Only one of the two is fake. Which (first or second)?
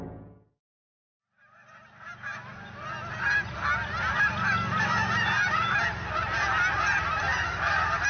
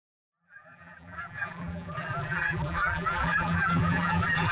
second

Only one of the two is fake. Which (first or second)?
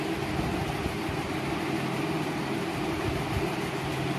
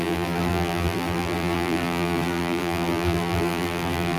second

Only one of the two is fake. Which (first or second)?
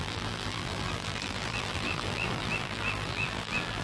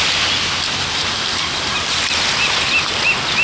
first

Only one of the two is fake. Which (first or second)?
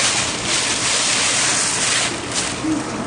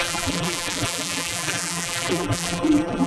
second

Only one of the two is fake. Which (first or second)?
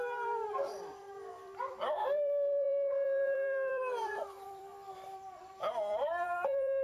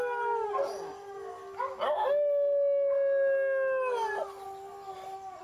first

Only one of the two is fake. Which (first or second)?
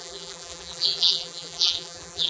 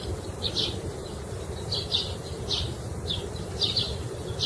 first